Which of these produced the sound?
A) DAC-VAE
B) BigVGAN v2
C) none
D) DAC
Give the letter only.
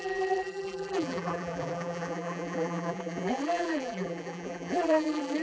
B